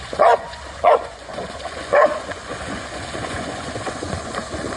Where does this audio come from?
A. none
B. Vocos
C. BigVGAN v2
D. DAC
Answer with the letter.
B